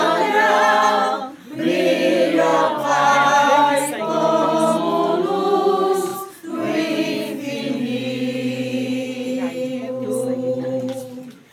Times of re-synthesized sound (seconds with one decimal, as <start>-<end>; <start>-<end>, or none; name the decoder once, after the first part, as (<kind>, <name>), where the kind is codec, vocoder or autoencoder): none